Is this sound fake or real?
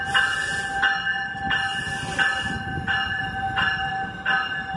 real